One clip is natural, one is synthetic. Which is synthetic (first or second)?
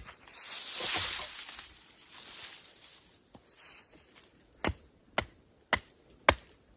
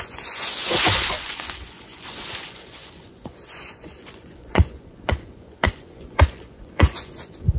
second